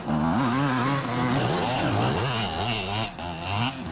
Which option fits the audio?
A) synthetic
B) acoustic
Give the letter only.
B